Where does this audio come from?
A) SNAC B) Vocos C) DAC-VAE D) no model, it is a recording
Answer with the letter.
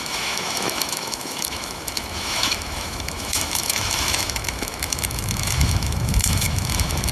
C